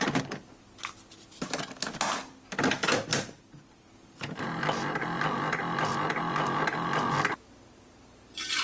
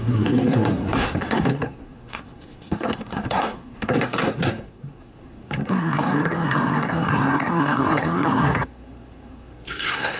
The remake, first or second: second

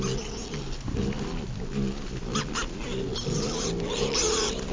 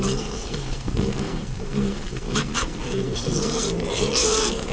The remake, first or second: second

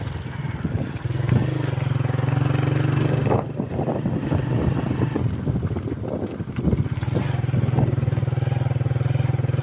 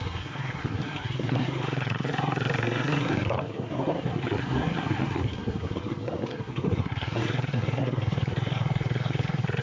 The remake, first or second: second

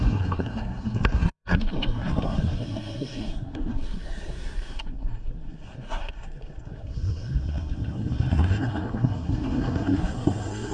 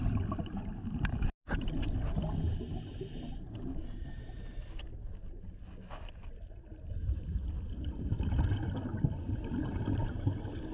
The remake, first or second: first